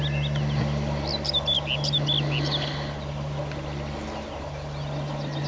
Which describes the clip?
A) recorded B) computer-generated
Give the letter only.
A